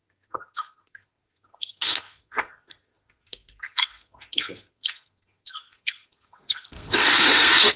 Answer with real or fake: fake